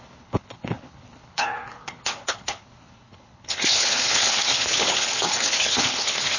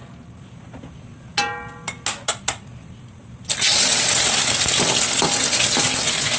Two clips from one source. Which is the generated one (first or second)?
first